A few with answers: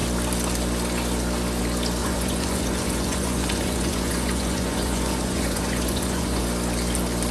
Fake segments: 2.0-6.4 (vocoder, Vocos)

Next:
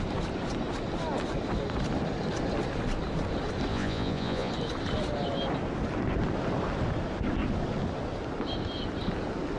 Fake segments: 3.7-4.5 (vocoder, Vocos)

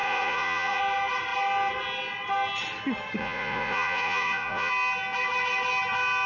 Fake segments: 0.0-0.8 (vocoder, Vocos); 3.2-4.7

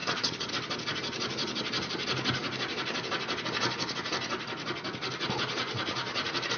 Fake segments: 0.0-0.5 (vocoder, Vocos)